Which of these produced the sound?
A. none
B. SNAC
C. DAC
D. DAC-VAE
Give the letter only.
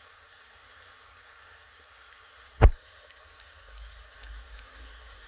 B